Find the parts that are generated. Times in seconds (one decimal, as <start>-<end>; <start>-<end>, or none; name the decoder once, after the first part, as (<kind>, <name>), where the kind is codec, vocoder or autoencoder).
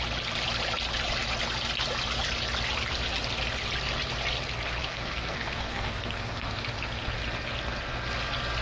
4.8-6.5 (codec, SNAC)